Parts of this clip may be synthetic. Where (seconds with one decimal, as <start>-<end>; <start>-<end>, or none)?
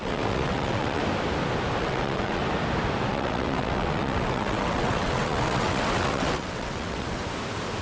0.0-1.0; 1.8-2.4; 3.1-7.2